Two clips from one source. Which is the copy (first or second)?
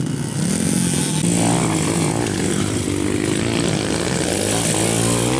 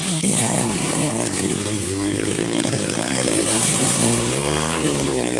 second